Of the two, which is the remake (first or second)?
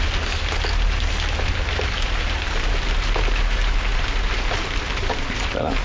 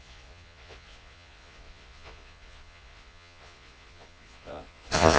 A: second